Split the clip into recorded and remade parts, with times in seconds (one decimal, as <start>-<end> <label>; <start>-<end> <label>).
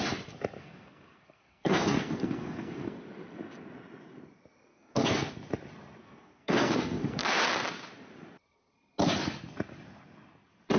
0.0-0.6 recorded; 0.6-3.0 remade; 3.0-4.7 recorded; 4.7-5.3 remade; 5.3-6.0 recorded; 6.0-7.4 remade; 7.4-10.8 recorded